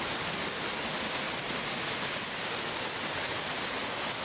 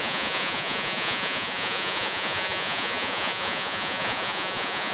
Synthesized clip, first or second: second